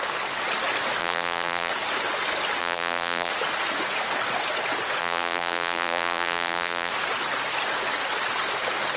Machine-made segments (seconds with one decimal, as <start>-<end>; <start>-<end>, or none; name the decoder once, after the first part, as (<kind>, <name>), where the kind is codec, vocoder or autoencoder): 1.0-1.7 (vocoder, BigVGAN v2); 2.6-3.3; 5.0-6.9